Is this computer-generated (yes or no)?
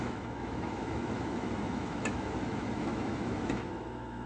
yes